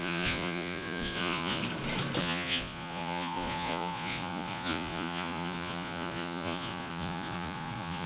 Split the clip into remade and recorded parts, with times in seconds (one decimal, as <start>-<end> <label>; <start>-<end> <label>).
0.0-1.6 remade; 1.6-2.2 recorded; 2.2-8.1 remade